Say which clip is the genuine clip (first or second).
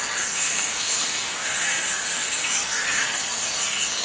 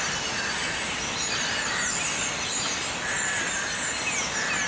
second